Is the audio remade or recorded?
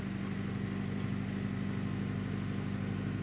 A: recorded